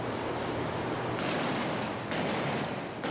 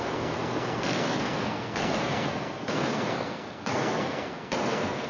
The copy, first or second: second